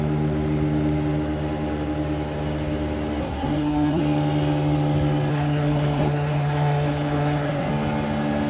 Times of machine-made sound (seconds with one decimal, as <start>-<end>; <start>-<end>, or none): 3.2-4.0; 5.3-7.7